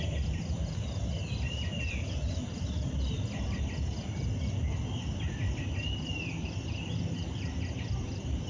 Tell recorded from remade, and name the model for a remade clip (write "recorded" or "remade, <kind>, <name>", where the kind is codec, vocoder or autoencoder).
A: recorded